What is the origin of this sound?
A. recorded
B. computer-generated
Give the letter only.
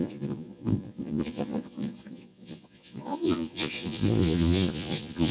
B